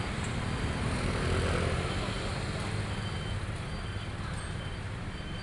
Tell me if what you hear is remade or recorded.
recorded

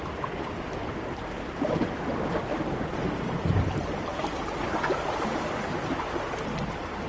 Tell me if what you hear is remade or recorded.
recorded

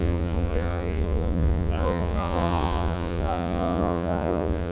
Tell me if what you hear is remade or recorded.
remade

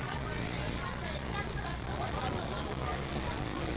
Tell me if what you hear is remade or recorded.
remade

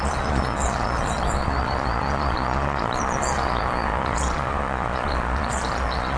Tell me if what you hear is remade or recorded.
remade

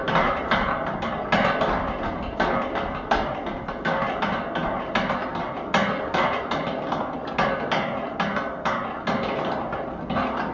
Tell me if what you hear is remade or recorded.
recorded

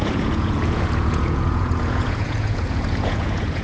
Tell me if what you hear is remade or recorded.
remade